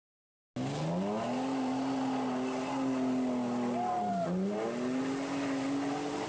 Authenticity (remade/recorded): recorded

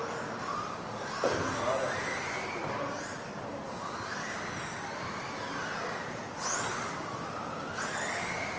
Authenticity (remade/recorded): recorded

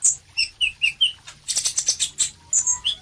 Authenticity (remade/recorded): recorded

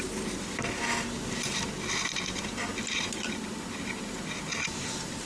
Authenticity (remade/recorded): recorded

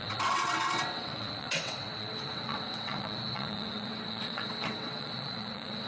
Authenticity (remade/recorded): remade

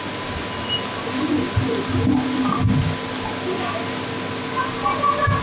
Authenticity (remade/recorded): recorded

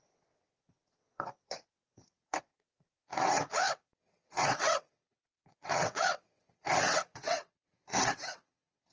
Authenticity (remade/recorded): remade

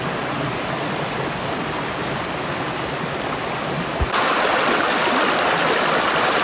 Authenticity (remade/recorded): recorded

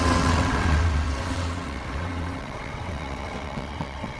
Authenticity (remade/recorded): remade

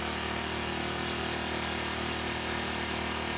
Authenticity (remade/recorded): recorded